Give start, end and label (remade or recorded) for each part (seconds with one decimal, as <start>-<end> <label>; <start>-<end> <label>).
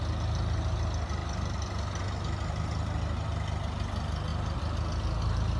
0.0-5.6 recorded